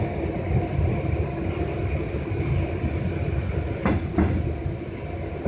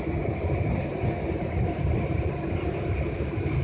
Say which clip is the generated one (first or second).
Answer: second